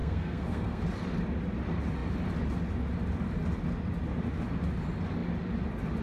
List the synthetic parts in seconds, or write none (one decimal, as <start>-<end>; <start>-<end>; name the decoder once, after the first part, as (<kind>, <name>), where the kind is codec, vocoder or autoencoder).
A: 0.0-0.8 (codec, SNAC)

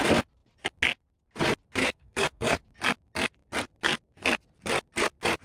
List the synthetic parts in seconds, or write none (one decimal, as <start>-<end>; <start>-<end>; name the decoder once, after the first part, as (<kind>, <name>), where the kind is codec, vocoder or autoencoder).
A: 1.8-2.6 (codec, SNAC)

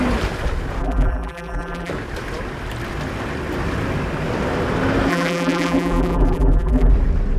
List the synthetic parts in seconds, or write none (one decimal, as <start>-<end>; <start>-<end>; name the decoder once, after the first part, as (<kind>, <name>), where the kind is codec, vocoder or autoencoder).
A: 0.8-1.9 (vocoder, BigVGAN v2); 5.1-6.9